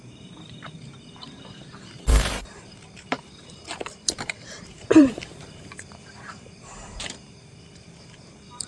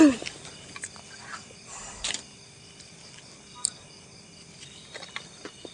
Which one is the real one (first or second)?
second